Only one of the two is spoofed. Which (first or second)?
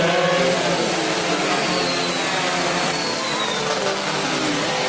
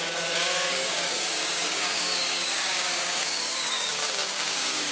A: second